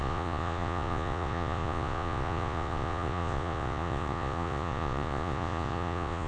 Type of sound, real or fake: fake